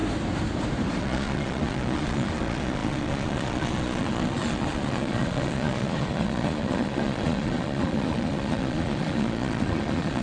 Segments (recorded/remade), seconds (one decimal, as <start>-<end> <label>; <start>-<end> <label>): 0.0-1.0 recorded; 1.0-10.2 remade